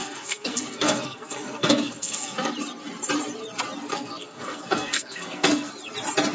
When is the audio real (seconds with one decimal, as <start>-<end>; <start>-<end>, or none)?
2.5-3.9; 5.7-6.3